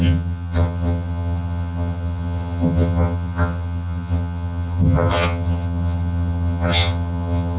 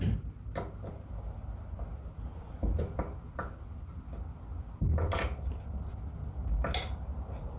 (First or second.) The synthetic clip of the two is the first